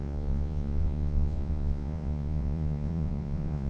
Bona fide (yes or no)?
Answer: no